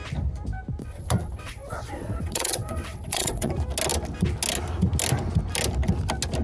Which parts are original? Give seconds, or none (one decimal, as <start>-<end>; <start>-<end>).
0.0-0.8; 3.5-6.4